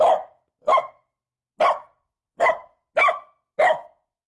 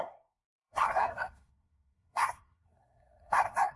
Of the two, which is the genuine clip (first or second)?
first